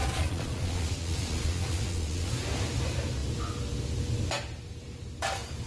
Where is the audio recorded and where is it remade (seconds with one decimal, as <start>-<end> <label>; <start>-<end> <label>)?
0.0-2.3 remade; 2.3-5.7 recorded